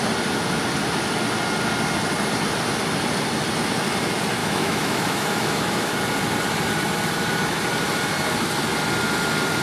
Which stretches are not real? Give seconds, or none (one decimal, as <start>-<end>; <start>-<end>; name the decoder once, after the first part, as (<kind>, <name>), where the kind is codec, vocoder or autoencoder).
4.4-5.9 (autoencoder, DAC-VAE)